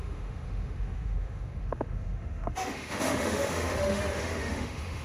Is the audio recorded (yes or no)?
no